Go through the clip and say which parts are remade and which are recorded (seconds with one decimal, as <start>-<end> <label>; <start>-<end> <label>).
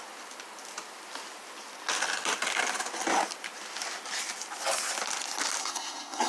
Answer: 0.0-5.6 recorded; 5.6-6.3 remade